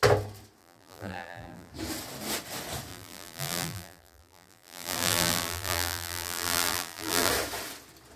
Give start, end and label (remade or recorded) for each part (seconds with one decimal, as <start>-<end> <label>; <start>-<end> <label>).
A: 0.0-0.6 recorded; 0.6-1.7 remade; 1.7-2.9 recorded; 2.9-7.3 remade; 7.3-8.2 recorded